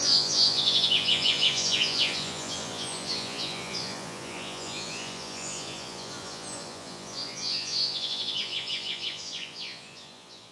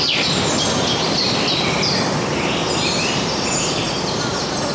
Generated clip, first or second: first